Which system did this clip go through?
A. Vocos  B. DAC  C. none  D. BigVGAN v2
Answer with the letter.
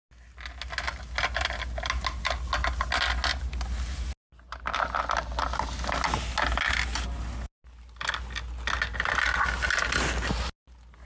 C